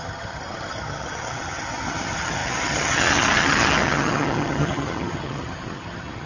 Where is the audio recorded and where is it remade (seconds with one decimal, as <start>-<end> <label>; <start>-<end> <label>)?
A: 0.0-6.3 remade